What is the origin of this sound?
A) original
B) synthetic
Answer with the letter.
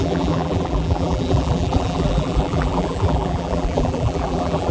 B